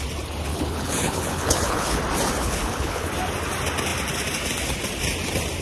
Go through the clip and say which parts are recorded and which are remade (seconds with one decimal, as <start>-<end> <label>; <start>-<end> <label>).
0.0-0.5 recorded; 0.5-2.0 remade; 2.0-2.4 recorded; 2.4-3.1 remade; 3.1-5.6 recorded